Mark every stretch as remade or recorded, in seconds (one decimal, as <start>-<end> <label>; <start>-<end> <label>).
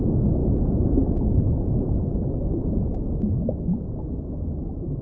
0.0-0.4 recorded; 0.4-2.0 remade; 2.0-5.0 recorded